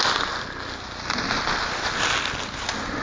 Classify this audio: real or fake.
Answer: real